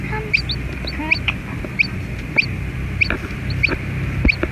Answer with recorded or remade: recorded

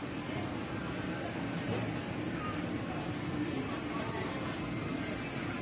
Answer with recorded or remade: recorded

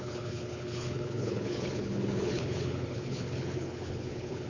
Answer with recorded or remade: remade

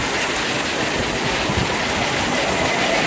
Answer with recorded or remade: recorded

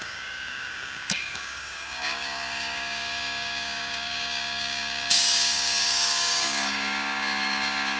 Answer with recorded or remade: remade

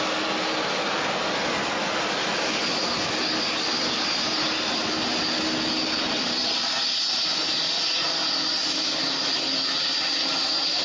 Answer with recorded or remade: recorded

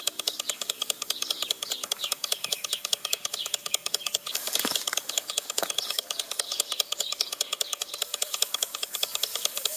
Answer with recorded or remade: remade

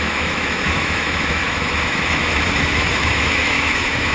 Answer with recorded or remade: remade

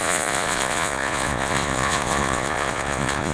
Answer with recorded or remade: remade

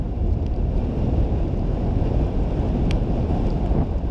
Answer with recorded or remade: recorded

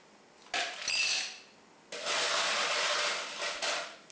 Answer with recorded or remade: recorded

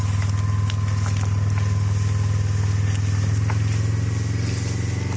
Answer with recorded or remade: recorded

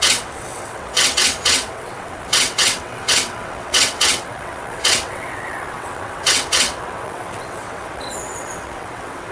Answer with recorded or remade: remade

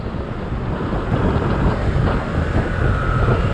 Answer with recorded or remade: remade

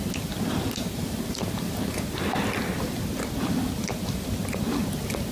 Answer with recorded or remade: recorded